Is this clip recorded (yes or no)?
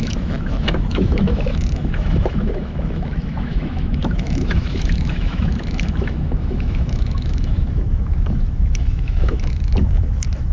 no